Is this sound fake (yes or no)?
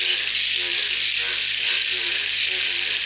no